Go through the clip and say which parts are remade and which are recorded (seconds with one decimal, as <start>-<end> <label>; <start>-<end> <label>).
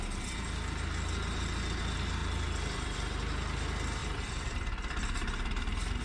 0.0-2.2 recorded; 2.2-3.1 remade; 3.1-4.0 recorded; 4.0-6.0 remade